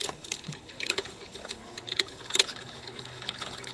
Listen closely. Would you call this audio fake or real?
fake